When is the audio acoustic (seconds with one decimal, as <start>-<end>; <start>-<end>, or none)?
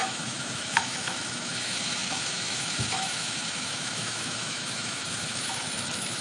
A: none